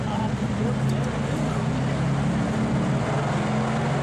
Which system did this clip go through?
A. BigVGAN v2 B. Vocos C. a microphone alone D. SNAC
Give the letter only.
C